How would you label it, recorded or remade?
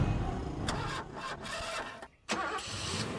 recorded